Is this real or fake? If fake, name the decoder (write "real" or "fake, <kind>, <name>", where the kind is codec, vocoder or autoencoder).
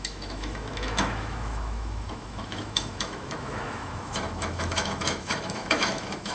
fake, autoencoder, DAC-VAE